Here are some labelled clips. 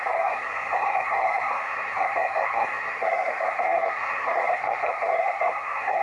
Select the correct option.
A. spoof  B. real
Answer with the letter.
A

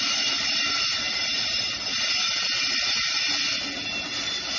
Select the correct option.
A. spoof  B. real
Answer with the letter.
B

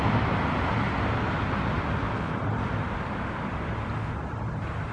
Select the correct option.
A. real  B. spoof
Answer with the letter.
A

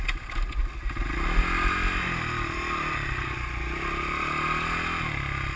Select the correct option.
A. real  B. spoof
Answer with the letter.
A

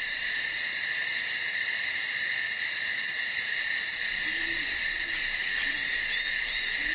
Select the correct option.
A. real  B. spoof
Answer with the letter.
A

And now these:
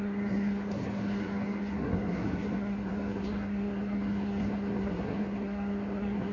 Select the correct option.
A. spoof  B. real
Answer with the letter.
A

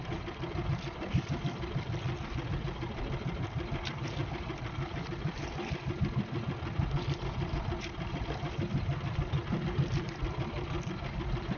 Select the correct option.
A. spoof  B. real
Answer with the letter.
A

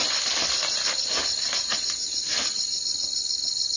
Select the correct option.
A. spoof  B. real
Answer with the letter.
B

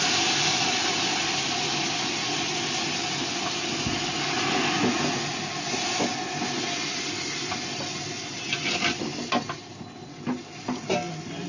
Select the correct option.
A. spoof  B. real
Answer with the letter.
B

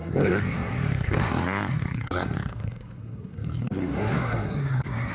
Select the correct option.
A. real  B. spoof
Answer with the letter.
B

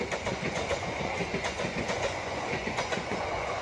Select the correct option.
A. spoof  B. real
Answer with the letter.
A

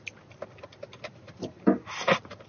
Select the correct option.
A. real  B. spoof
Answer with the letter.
A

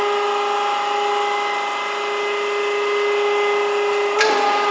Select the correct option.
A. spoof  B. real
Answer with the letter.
B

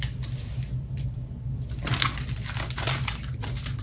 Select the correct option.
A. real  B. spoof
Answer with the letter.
A